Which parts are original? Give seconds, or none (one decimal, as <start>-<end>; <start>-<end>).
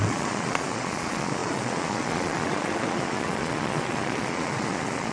none